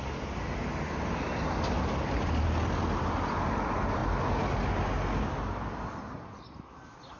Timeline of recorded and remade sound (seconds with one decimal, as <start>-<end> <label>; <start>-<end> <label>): 0.0-7.2 recorded

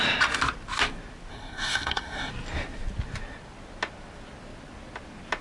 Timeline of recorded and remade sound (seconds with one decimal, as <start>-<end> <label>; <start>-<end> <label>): 0.0-1.3 recorded; 1.3-2.3 remade; 2.3-5.4 recorded